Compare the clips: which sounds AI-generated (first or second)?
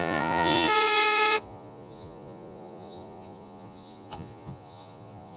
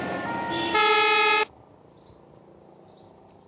first